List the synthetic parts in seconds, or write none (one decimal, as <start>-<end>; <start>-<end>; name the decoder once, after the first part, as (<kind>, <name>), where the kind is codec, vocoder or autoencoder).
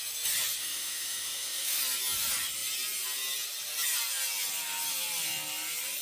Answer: 0.6-1.8 (autoencoder, DAC-VAE)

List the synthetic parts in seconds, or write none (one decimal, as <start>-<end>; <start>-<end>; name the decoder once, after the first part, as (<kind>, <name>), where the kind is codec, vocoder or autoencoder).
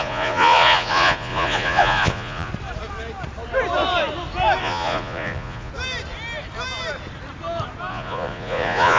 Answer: 0.0-2.5 (vocoder, Vocos); 4.6-5.7; 7.9-9.0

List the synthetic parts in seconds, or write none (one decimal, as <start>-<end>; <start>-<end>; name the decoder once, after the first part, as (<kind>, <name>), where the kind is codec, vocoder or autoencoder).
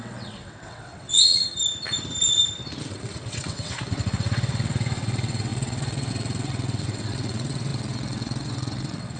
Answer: 0.0-1.5 (vocoder, WaveNeXt); 2.8-9.2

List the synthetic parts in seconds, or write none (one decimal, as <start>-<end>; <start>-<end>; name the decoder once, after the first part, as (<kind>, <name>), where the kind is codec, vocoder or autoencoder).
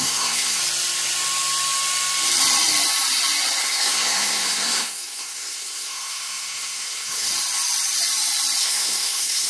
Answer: 0.0-0.6 (codec, SNAC); 3.6-7.3; 8.6-9.5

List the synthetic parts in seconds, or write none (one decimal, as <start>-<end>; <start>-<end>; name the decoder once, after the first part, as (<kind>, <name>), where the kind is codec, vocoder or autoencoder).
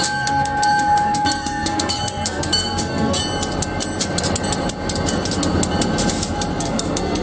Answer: 0.0-3.2 (codec, SNAC); 6.6-7.2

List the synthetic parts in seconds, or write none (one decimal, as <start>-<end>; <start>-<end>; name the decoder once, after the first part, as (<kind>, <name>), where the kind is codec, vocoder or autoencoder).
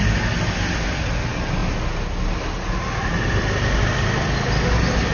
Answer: none